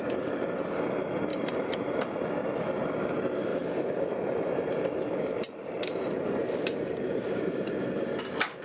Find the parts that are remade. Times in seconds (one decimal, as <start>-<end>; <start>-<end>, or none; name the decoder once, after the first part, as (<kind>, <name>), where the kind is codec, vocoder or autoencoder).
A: 1.3-2.3 (vocoder, BigVGAN v2); 3.5-8.2